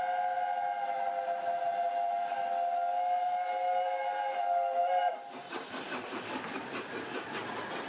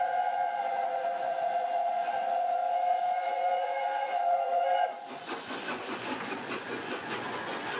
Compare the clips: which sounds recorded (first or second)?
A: first